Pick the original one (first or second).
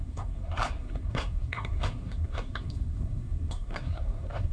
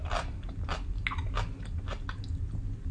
second